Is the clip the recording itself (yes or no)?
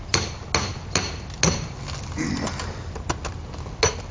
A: yes